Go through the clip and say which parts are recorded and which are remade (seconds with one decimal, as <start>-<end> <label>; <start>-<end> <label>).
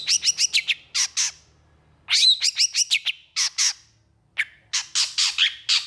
0.0-5.9 recorded